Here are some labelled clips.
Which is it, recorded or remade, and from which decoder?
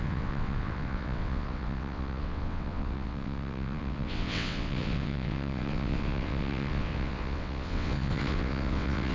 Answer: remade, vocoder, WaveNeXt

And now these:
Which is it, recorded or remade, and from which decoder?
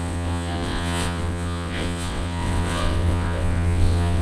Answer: remade, vocoder, WaveNeXt